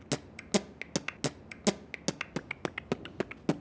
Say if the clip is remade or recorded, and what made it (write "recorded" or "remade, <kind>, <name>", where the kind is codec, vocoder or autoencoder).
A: recorded